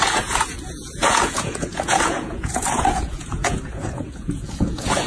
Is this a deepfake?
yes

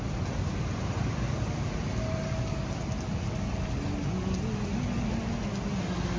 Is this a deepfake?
no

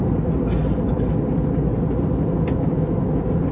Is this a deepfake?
no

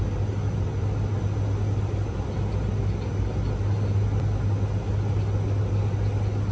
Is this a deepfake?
no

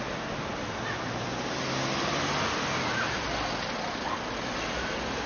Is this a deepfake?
no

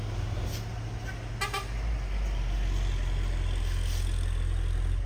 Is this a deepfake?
no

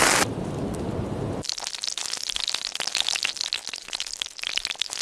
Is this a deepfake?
no